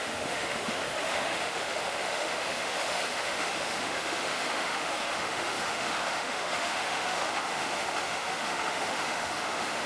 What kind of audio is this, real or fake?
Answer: fake